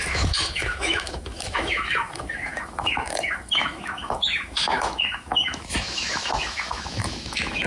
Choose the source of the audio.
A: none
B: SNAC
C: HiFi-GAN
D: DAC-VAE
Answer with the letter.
D